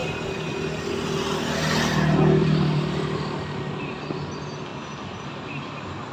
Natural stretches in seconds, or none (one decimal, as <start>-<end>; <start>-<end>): 0.0-2.4; 3.6-6.1